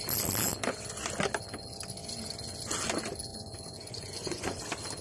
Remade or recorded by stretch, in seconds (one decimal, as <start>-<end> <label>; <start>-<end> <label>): 0.0-3.3 recorded; 3.3-4.6 remade; 4.6-5.0 recorded